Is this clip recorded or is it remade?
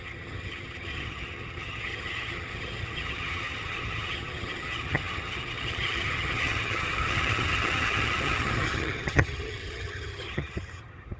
remade